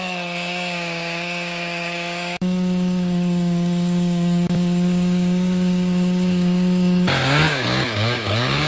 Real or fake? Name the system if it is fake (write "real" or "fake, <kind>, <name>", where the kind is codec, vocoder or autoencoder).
fake, codec, DAC